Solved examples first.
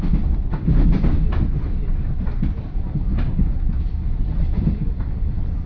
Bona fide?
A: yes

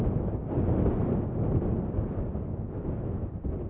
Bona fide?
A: yes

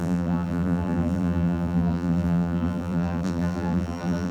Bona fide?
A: no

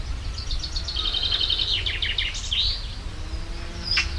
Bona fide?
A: yes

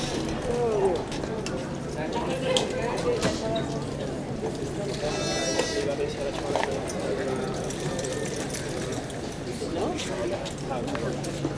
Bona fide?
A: yes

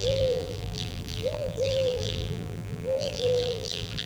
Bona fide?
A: no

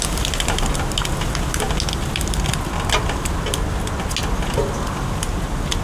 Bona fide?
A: yes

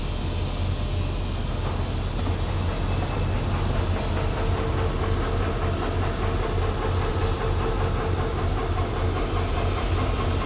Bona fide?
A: yes